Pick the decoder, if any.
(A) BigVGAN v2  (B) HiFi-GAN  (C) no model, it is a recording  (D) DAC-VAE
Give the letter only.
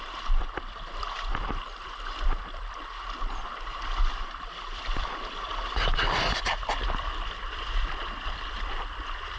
A